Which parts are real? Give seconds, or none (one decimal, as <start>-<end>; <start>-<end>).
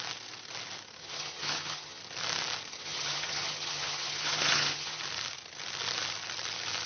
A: 0.0-1.0; 2.0-2.7; 5.0-6.9